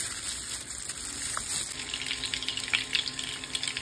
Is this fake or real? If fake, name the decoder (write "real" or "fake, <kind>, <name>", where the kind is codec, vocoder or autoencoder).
real